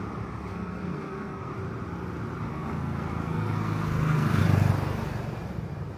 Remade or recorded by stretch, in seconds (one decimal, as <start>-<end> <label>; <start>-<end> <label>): 0.0-0.5 recorded; 0.5-1.5 remade; 1.5-2.5 recorded; 2.5-4.4 remade; 4.4-6.0 recorded